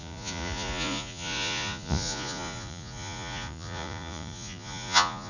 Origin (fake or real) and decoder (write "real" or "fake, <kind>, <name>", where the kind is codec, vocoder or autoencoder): fake, vocoder, Vocos